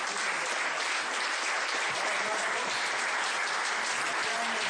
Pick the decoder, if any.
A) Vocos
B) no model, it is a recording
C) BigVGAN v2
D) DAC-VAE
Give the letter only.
B